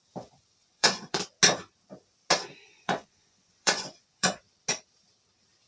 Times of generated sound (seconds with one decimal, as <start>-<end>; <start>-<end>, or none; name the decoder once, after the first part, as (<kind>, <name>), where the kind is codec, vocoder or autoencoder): 0.6-1.2 (vocoder, Vocos); 2.6-4.4